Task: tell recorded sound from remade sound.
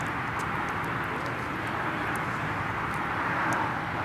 recorded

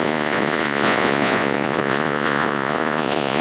remade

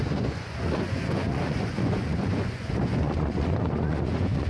remade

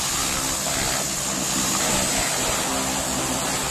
recorded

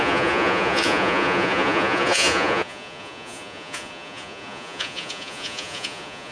remade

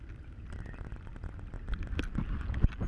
recorded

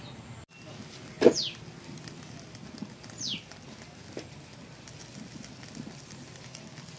recorded